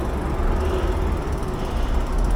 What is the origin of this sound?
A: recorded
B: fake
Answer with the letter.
A